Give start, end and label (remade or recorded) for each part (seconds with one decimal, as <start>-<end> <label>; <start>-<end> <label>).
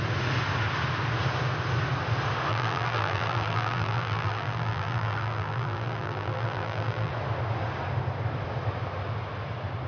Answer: 0.0-2.5 recorded; 2.5-7.1 remade; 7.1-9.9 recorded